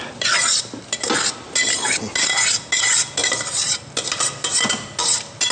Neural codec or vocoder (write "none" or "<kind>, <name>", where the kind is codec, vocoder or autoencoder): none